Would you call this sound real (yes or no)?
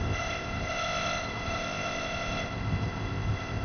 no